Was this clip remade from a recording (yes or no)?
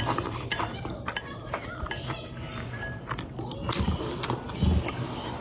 no